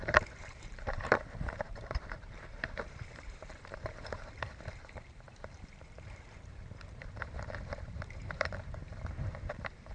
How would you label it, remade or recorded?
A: remade